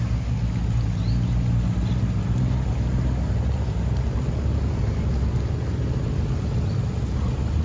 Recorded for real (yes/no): yes